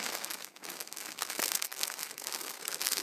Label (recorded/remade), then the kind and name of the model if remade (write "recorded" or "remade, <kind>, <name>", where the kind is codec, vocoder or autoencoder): remade, codec, SNAC